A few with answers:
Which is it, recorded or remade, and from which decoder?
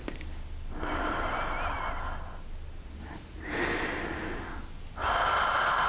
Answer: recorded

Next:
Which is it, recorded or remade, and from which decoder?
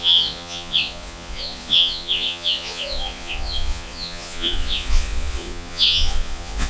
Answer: remade, vocoder, Vocos